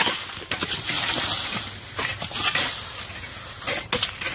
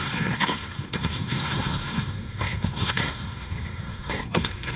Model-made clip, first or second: second